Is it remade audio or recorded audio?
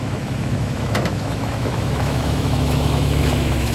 remade